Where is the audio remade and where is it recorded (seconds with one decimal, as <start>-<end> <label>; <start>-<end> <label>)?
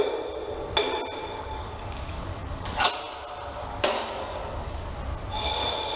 0.0-1.2 recorded; 1.2-2.9 remade; 2.9-3.6 recorded; 3.6-4.9 remade; 4.9-6.0 recorded